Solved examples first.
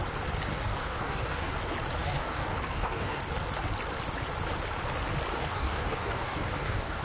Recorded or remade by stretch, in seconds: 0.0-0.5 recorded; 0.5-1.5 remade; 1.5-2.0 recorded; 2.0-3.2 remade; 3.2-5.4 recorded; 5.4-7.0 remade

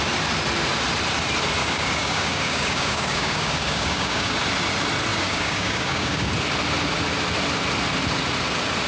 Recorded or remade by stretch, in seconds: 0.0-1.6 recorded; 1.6-4.4 remade; 4.4-5.1 recorded; 5.1-6.3 remade; 6.3-8.9 recorded